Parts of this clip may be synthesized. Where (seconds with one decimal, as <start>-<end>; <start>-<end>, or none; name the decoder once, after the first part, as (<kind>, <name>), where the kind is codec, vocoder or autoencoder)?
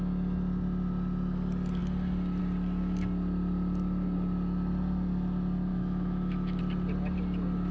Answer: 5.7-6.6 (autoencoder, DAC-VAE)